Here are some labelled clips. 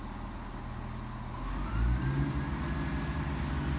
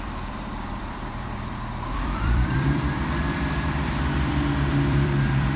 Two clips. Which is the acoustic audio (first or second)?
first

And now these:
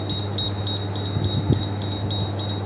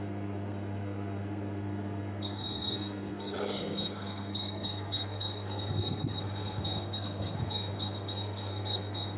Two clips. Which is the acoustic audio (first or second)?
first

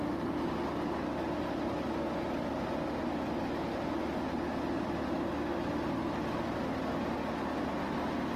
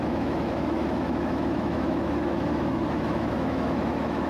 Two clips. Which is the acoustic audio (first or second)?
first